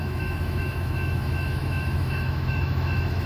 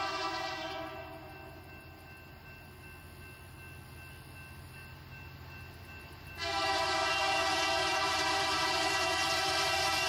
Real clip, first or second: second